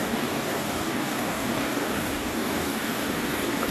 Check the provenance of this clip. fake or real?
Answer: fake